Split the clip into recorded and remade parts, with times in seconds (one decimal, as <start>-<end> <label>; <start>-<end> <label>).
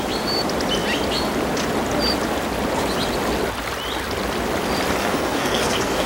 0.0-5.0 recorded; 5.0-6.1 remade